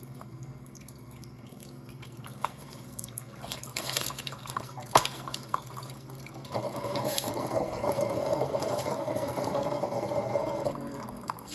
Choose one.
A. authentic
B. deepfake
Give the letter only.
B